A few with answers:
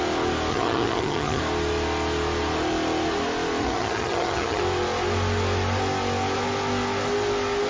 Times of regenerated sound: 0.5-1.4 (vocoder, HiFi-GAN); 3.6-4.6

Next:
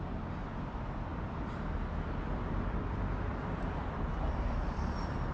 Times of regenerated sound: none

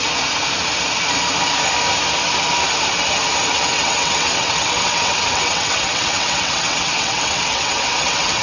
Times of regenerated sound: 3.5-8.4 (vocoder, WaveNeXt)